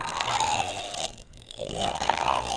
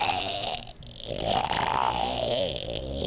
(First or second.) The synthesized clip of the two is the first